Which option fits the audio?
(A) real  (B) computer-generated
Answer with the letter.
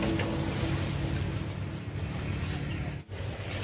A